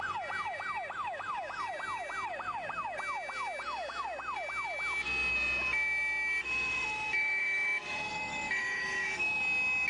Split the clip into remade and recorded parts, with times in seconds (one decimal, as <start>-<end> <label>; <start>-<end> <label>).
0.0-6.4 recorded; 6.4-9.4 remade; 9.4-9.9 recorded